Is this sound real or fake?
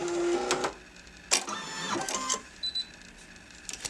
real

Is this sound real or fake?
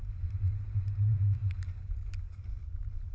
fake